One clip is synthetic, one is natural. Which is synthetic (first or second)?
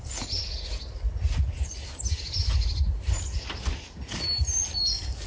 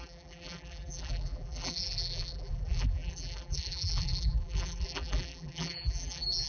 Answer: second